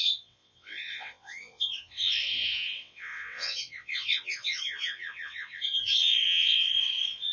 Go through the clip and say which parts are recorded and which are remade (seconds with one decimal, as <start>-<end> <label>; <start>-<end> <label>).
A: 0.0-7.3 remade